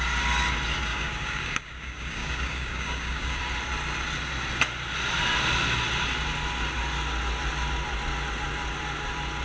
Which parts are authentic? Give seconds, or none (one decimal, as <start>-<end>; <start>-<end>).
0.0-0.9; 3.4-9.4

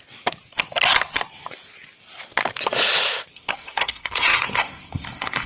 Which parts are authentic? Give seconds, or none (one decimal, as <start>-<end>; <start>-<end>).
0.0-3.3

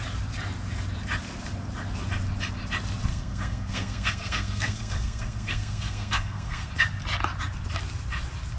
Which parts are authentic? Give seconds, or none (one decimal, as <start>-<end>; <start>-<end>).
0.0-3.1; 6.7-8.6

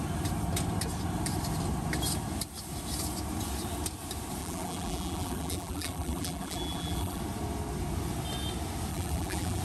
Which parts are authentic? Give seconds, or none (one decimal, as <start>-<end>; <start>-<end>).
0.0-4.4; 7.2-8.9

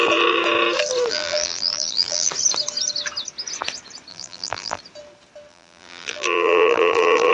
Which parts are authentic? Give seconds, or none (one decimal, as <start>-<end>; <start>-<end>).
0.0-1.1; 2.3-4.1; 4.8-5.5

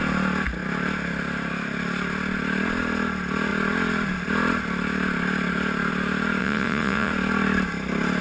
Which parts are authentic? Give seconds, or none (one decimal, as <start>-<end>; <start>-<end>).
0.0-6.4; 7.1-8.2

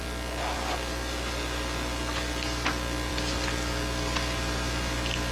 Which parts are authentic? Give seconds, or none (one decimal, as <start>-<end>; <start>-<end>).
0.0-5.3